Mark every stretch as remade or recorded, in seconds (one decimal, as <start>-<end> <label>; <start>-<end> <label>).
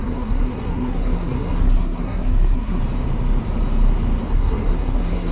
0.0-2.8 remade; 2.8-4.3 recorded; 4.3-5.3 remade